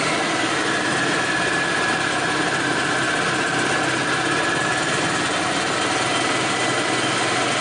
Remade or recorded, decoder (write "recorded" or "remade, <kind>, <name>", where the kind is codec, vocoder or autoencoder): recorded